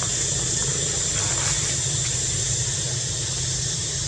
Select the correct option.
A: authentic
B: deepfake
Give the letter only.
A